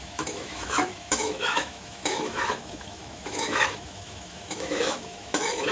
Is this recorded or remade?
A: remade